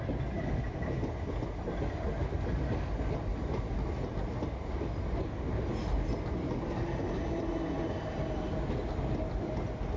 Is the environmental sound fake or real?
real